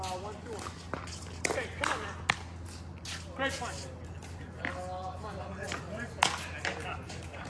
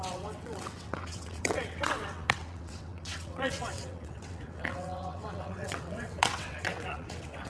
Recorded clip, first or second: first